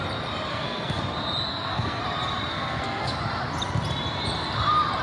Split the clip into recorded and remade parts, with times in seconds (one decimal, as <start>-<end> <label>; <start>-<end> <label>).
0.0-0.5 recorded; 0.5-1.0 remade; 1.0-1.5 recorded; 1.5-2.0 remade; 2.0-2.5 recorded; 2.5-3.2 remade; 3.2-5.0 recorded